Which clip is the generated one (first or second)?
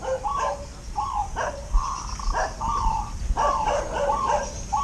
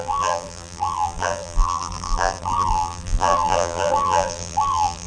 second